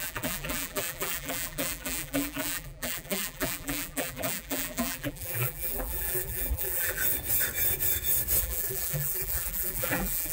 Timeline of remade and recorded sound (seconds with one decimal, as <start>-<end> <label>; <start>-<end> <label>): 0.0-7.0 remade; 7.0-8.4 recorded; 8.4-10.3 remade